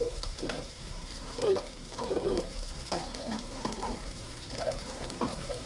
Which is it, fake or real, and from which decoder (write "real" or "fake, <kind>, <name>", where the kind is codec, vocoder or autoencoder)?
fake, codec, SNAC